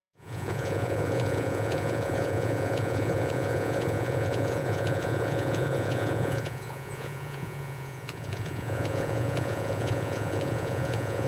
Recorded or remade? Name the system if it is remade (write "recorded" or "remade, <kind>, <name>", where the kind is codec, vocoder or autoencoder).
remade, vocoder, Vocos